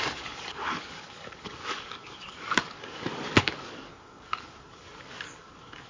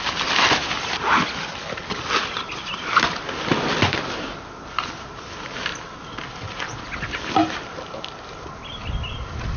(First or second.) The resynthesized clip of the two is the first